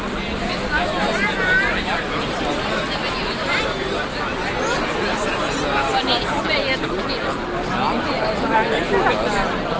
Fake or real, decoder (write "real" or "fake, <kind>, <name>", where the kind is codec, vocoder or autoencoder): real